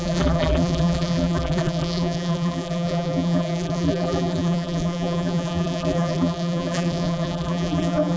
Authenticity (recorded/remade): remade